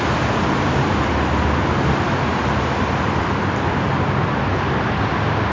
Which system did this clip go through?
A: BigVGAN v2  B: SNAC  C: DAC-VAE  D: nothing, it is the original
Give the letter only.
D